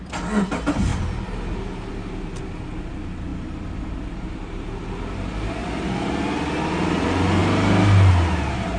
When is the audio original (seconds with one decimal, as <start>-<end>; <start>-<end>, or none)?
0.0-8.8

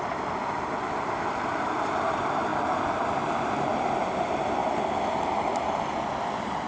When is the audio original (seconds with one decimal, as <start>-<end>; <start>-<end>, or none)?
0.0-6.7

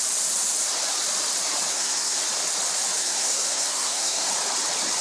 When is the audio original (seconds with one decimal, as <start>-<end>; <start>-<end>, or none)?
0.0-1.7; 2.2-3.0; 4.3-5.0

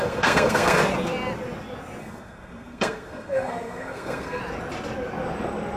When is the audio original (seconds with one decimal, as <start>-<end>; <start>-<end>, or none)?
0.8-2.0; 4.4-5.8